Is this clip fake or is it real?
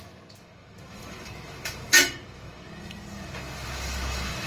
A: fake